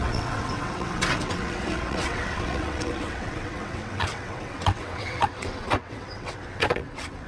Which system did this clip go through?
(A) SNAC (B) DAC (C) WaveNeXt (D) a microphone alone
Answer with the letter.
C